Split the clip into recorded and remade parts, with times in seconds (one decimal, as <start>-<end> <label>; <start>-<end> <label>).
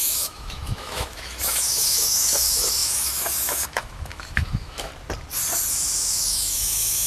0.0-4.9 remade; 4.9-5.7 recorded; 5.7-7.1 remade